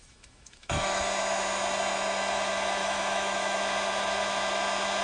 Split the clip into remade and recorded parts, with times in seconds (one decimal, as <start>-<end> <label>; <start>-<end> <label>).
0.0-1.0 remade; 1.0-2.8 recorded; 2.8-3.6 remade; 3.6-5.0 recorded